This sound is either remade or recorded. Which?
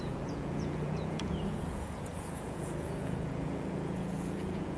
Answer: remade